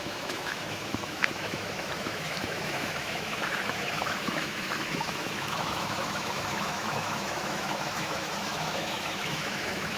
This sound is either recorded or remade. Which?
remade